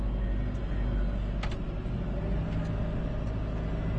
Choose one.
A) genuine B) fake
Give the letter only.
A